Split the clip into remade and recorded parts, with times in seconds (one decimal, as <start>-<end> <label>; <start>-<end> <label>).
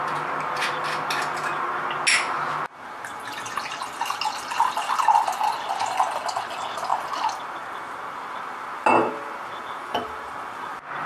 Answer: 0.0-11.1 recorded